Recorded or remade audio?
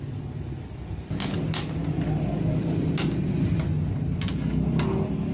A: recorded